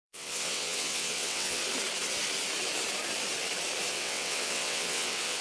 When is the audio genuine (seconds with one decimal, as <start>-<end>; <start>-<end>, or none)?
1.6-3.9